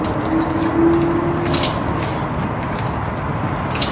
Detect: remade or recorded recorded